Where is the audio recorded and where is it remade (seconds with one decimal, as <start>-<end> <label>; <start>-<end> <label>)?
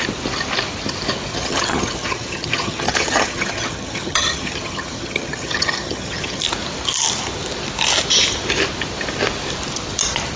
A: 0.0-1.3 recorded; 1.3-6.4 remade; 6.4-10.4 recorded